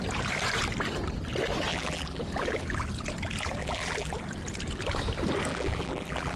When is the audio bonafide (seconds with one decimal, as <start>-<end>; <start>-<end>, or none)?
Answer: 0.0-1.7; 2.2-3.6; 4.1-5.5